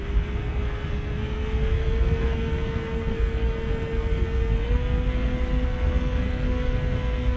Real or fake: fake